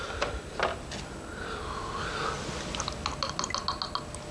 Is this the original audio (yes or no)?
yes